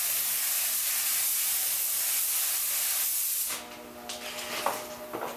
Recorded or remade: recorded